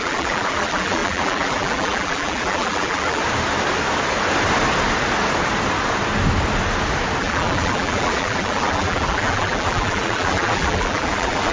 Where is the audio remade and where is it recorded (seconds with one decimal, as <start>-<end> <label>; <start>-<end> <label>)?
0.0-3.2 remade; 3.2-7.2 recorded; 7.2-11.5 remade